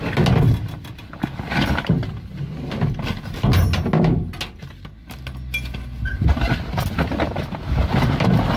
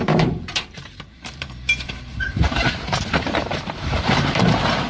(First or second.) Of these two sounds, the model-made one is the second